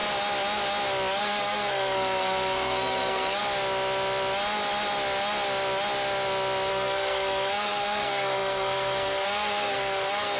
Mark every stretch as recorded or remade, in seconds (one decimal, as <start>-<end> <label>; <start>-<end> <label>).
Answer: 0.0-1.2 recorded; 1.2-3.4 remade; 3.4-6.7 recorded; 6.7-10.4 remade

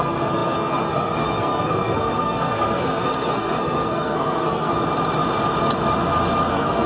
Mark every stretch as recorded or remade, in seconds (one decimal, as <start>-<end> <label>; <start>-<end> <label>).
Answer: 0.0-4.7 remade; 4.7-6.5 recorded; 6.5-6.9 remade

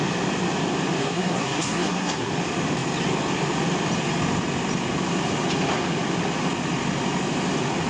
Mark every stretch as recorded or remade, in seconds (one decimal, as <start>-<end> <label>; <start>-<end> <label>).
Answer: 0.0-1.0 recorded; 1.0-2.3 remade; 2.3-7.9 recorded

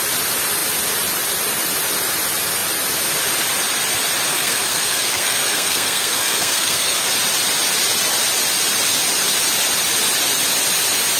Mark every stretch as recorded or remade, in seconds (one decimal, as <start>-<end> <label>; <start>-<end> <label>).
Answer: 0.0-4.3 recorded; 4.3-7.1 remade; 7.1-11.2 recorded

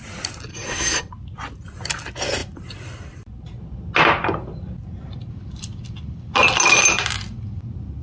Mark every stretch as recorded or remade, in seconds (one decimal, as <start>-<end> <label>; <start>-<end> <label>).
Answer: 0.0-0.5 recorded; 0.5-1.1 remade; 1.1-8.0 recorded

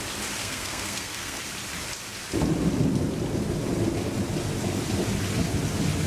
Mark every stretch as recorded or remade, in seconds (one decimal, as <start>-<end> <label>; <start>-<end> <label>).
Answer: 0.0-0.4 recorded; 0.4-1.4 remade; 1.4-6.1 recorded

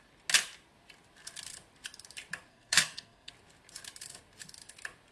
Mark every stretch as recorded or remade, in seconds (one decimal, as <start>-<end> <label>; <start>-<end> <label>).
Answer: 0.0-2.5 recorded; 2.5-3.3 remade; 3.3-5.1 recorded